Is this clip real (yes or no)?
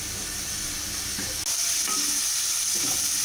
yes